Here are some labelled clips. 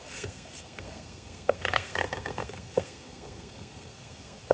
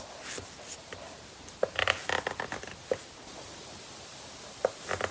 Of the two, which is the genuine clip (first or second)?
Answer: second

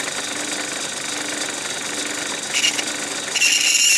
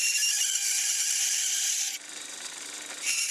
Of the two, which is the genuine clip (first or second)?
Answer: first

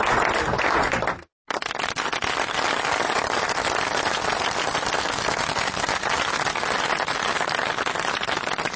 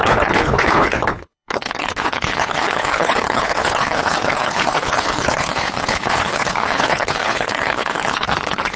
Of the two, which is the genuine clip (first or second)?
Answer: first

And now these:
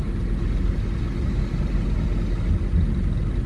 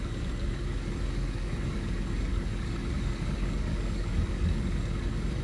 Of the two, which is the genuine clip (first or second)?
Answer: first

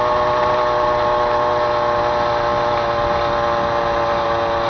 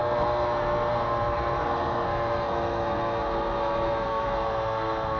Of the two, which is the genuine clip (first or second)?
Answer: first